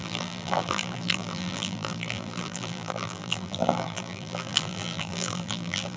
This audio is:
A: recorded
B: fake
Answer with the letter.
B